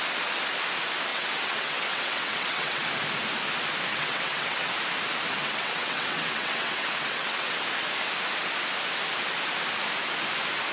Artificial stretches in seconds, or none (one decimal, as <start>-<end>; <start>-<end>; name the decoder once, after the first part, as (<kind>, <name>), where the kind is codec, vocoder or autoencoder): 1.1-2.9 (vocoder, WaveNeXt); 3.9-4.7; 5.4-7.6

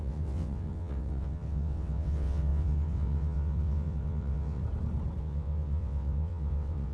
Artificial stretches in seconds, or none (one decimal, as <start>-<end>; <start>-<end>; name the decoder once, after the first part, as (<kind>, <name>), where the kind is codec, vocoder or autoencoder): 0.0-4.6 (vocoder, WaveNeXt); 5.2-6.9

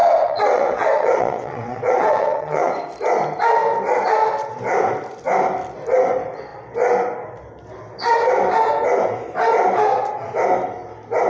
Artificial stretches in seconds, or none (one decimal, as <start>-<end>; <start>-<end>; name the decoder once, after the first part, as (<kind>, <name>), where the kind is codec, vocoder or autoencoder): 0.0-2.7 (vocoder, WaveNeXt)

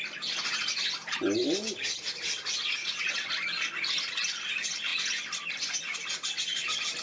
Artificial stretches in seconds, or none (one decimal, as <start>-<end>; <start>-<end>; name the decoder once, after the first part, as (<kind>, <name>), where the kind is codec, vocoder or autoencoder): 2.8-3.3 (vocoder, WaveNeXt)

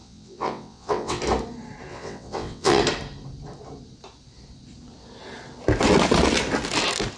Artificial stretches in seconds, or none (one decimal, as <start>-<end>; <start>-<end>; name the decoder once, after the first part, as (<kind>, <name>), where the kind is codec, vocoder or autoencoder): 0.0-1.2 (vocoder, WaveNeXt); 1.9-2.8